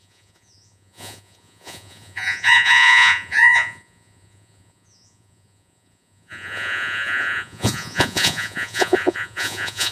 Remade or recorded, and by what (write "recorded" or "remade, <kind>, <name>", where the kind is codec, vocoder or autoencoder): remade, vocoder, Vocos